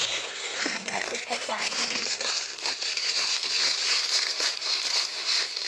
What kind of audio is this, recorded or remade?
remade